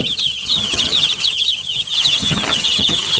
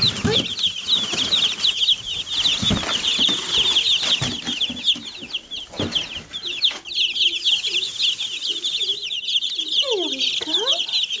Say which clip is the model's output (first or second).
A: first